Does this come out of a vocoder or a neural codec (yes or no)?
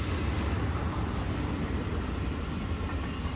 no